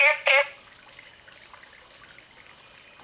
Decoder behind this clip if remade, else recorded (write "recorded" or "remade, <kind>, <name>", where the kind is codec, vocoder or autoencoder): recorded